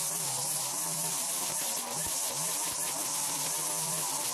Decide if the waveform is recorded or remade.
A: remade